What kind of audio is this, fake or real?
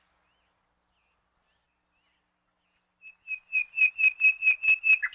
real